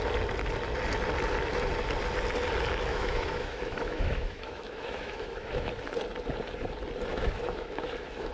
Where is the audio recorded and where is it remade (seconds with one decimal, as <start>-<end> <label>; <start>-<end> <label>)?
0.0-2.9 recorded; 2.9-5.7 remade; 5.7-7.1 recorded; 7.1-8.3 remade